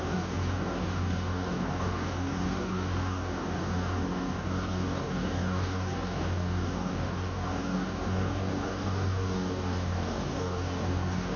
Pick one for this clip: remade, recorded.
remade